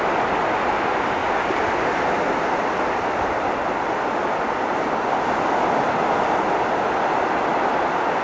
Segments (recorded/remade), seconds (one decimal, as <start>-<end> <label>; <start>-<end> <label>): 0.0-8.2 recorded